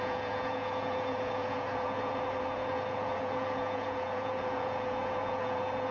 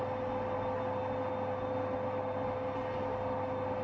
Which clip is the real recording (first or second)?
second